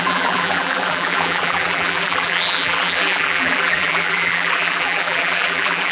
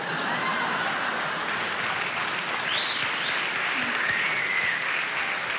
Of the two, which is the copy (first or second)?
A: first